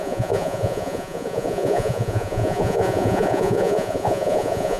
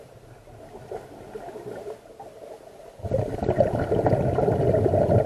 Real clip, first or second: second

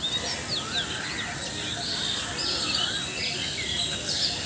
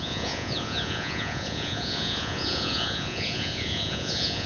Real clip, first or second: first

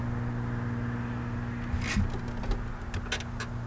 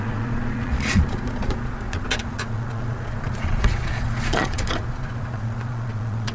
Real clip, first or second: first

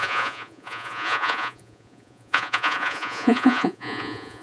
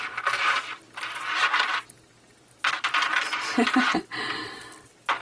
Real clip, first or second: second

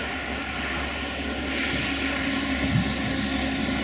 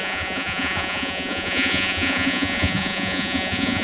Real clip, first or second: first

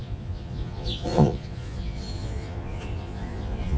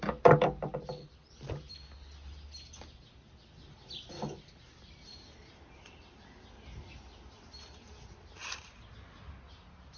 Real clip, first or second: second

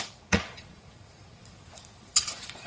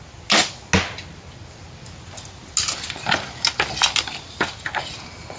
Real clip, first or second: second